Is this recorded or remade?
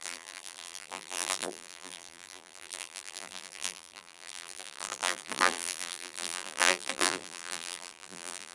remade